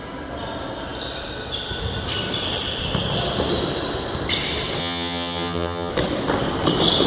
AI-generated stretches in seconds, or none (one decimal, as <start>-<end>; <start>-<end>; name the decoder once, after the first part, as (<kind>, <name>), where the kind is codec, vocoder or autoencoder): 4.8-5.9 (vocoder, HiFi-GAN)